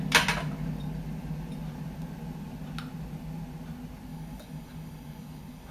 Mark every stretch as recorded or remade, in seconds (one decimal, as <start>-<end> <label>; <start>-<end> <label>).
0.0-4.1 recorded; 4.1-5.7 remade